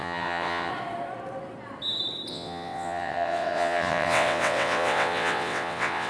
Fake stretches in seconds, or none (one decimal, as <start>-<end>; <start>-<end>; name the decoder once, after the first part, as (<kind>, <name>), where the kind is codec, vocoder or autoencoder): 0.0-0.7 (vocoder, WaveNeXt); 2.3-6.1